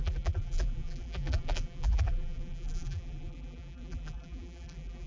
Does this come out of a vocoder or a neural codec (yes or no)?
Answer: yes